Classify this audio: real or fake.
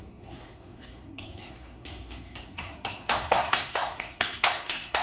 fake